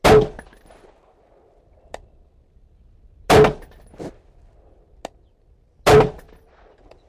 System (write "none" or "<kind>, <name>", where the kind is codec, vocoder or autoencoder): none